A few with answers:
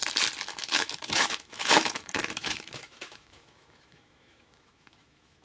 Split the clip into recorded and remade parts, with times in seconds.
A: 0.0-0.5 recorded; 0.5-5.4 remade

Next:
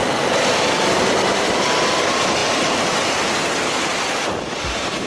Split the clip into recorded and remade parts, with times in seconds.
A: 0.0-5.1 recorded